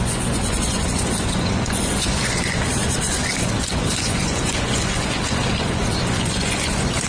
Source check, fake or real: fake